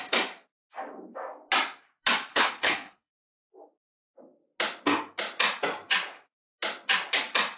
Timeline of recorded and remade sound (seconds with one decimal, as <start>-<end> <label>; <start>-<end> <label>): 0.0-2.3 recorded; 2.3-3.1 remade; 3.1-7.6 recorded